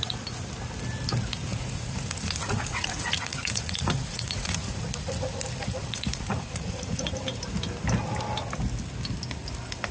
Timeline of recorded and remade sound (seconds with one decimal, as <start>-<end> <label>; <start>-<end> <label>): 0.0-1.5 recorded; 1.5-4.8 remade; 4.8-5.8 recorded; 5.8-7.1 remade; 7.1-9.9 recorded